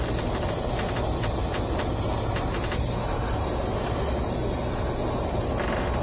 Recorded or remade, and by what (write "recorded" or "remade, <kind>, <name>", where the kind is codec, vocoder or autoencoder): recorded